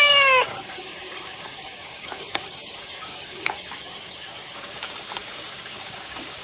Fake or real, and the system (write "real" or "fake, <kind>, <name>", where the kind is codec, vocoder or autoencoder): fake, codec, DAC